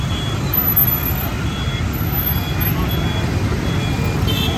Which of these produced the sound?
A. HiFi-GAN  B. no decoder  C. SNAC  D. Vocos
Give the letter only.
B